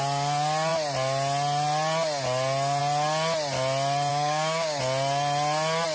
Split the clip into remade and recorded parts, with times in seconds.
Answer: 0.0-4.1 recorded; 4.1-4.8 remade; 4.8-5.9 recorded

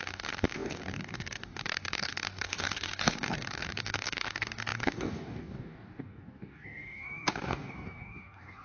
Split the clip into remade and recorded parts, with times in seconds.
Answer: 0.0-8.6 remade

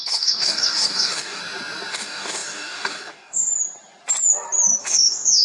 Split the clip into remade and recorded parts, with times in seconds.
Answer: 0.0-1.4 remade; 1.4-1.9 recorded; 1.9-3.5 remade; 3.5-4.8 recorded; 4.8-5.4 remade